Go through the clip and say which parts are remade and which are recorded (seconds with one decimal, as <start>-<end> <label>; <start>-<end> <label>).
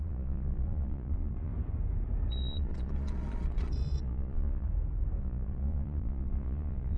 0.0-1.5 remade; 1.5-2.3 recorded; 2.3-4.7 remade; 4.7-5.2 recorded; 5.2-7.0 remade